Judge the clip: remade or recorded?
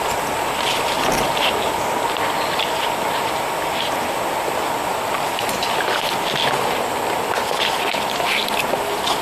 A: recorded